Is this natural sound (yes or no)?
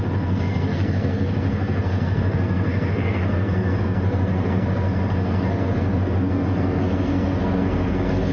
no